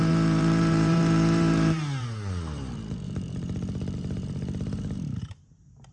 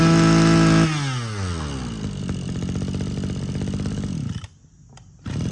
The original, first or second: second